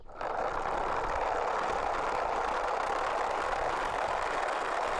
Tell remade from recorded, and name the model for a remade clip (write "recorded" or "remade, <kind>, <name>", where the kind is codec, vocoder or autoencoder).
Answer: recorded